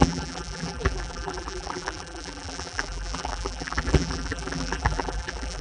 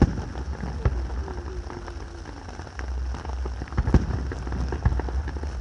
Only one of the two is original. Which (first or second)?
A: second